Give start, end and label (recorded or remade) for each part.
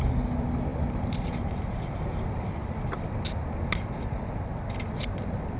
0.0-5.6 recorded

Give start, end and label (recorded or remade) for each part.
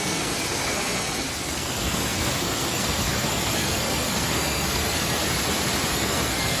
0.0-5.2 remade; 5.2-5.9 recorded; 5.9-6.6 remade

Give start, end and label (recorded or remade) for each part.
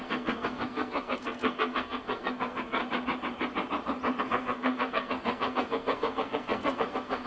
0.0-2.8 remade; 2.8-4.2 recorded; 4.2-7.3 remade